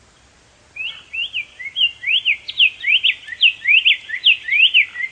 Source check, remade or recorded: recorded